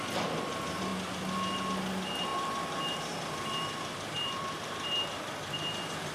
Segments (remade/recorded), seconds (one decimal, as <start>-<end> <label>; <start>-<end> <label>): 0.0-2.3 recorded; 2.3-6.1 remade